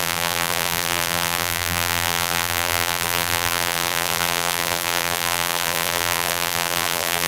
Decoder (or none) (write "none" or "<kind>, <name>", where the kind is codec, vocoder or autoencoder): vocoder, BigVGAN v2